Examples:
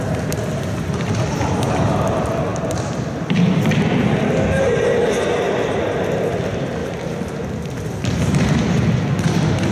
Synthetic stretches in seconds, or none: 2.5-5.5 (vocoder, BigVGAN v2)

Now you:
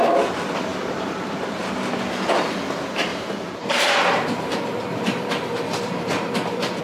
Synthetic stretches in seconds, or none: 0.7-1.6 (vocoder, BigVGAN v2); 3.1-6.8

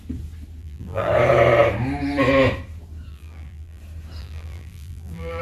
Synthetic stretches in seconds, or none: 0.6-1.1 (vocoder, BigVGAN v2); 3.1-3.8; 4.2-5.4

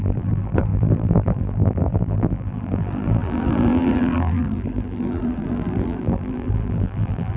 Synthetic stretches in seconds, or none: 0.0-7.4 (vocoder, BigVGAN v2)

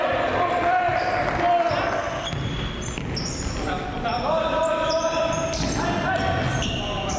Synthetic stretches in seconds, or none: none

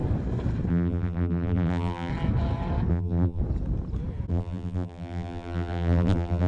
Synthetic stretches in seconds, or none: 0.7-2.1 (vocoder, BigVGAN v2); 2.9-3.4; 4.3-6.5

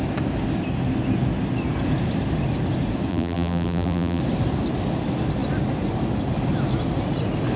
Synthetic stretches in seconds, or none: 3.1-4.2 (vocoder, BigVGAN v2)

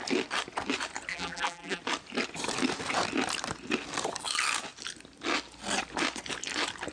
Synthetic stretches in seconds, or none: 1.1-1.8 (vocoder, BigVGAN v2)